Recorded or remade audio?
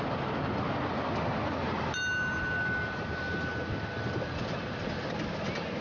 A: recorded